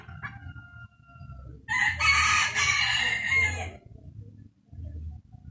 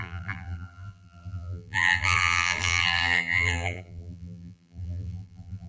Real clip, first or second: first